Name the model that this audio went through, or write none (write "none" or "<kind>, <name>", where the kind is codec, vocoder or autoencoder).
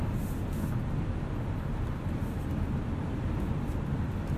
none